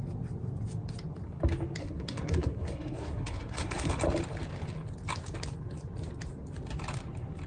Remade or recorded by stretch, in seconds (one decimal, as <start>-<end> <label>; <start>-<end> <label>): 0.0-1.8 recorded; 1.8-3.9 remade; 3.9-7.5 recorded